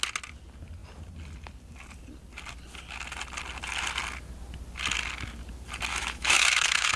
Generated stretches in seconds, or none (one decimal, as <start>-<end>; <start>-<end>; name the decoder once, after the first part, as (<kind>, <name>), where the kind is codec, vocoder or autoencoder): 5.9-7.0 (autoencoder, DAC-VAE)